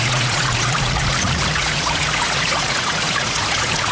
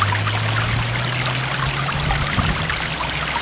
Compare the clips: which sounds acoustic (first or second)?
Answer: second